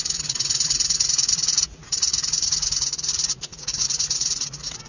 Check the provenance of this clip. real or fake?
fake